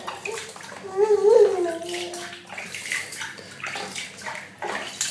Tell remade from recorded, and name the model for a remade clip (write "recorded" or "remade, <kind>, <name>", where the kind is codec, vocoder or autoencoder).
recorded